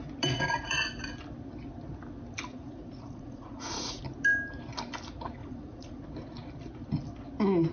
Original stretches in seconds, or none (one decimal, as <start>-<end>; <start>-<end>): 0.0-2.5; 4.0-5.4; 6.0-7.7